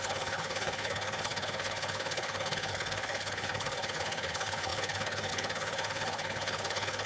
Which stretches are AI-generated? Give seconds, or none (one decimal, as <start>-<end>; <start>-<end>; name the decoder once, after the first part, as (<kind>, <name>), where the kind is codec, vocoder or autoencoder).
0.0-7.1 (codec, HILCodec)